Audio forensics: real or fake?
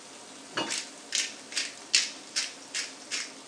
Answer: real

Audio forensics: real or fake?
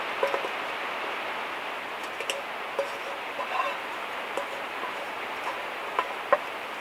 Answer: real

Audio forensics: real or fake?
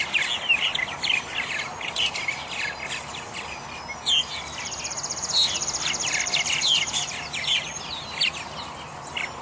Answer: real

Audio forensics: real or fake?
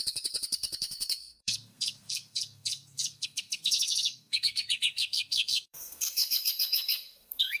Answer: fake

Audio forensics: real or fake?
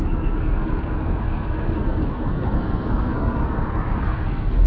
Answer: fake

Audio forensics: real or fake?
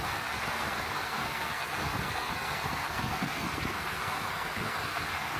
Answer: fake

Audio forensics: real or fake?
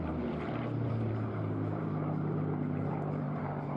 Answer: fake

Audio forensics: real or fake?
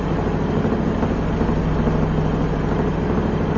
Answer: real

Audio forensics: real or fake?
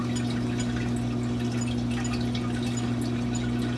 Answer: real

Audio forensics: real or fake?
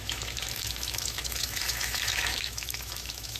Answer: fake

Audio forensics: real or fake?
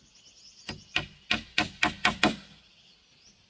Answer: real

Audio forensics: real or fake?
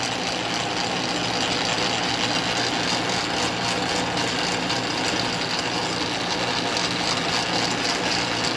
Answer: real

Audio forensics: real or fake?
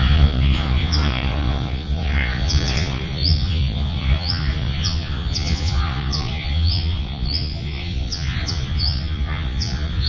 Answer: fake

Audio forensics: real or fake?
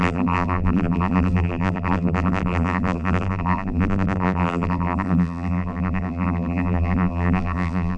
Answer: fake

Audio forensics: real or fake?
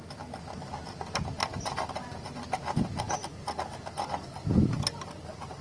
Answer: real